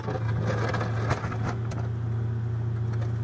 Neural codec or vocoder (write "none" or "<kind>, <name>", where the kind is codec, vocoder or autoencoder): none